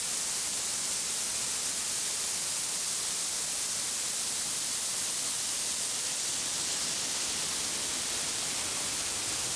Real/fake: real